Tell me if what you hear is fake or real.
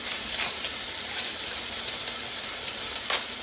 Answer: fake